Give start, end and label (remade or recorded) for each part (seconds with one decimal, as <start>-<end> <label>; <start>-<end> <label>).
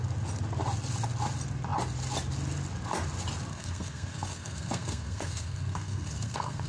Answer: 0.0-3.5 recorded; 3.5-6.7 remade